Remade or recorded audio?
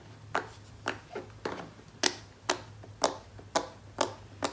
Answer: recorded